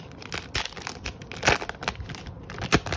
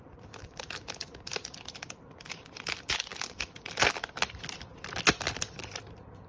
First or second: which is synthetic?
second